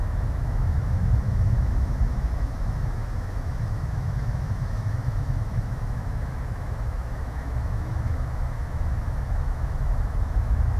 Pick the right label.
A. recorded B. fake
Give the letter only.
B